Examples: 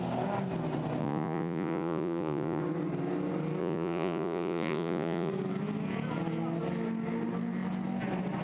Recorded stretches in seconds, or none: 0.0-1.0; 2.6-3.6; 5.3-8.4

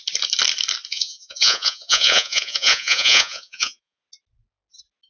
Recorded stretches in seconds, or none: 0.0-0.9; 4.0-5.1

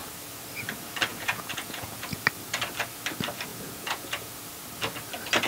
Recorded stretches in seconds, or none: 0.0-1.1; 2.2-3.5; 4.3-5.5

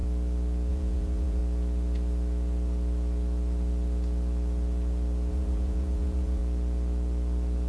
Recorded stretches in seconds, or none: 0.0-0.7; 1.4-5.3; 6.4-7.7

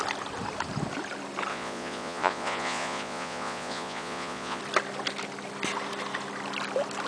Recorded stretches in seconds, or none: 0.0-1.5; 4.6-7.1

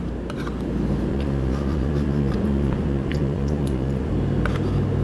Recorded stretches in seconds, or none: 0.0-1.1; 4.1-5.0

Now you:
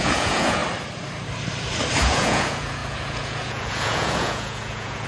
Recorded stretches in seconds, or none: 0.6-2.0

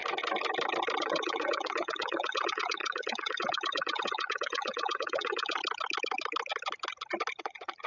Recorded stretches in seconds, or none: 0.0-1.0; 5.6-7.4